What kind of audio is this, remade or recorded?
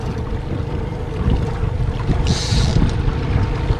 remade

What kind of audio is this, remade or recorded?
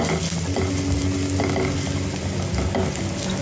recorded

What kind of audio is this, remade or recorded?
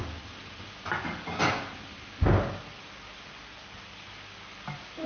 recorded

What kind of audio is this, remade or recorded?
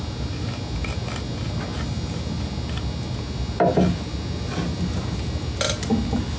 recorded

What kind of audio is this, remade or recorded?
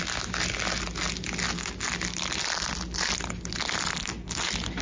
recorded